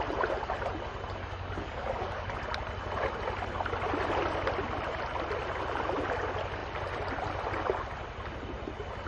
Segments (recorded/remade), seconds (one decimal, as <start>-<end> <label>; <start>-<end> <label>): 0.0-1.2 recorded; 1.2-2.3 remade; 2.3-9.1 recorded